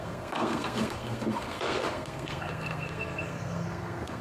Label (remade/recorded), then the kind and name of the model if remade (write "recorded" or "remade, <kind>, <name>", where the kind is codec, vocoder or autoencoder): remade, codec, SNAC